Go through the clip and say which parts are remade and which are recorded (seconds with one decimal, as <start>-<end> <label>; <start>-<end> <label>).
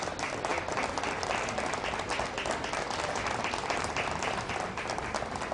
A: 0.0-5.5 recorded